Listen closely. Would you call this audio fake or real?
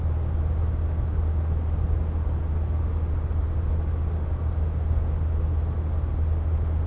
real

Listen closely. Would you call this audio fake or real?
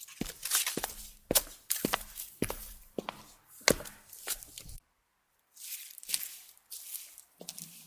real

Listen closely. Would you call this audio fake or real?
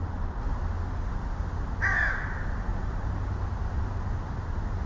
real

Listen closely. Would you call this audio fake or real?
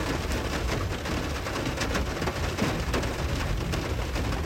real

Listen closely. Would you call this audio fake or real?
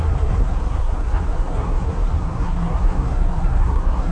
fake